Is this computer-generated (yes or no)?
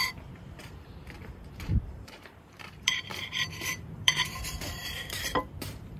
yes